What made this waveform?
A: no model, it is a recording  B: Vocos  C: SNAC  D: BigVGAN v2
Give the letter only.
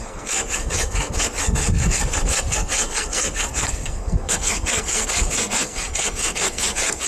C